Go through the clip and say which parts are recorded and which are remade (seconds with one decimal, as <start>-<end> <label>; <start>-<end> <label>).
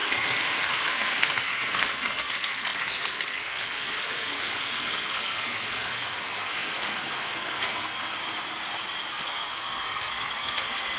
0.0-8.2 remade; 8.2-9.1 recorded; 9.1-11.0 remade